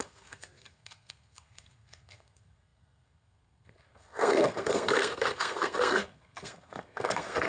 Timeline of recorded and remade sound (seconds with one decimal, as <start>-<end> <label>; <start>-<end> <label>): 0.0-7.5 remade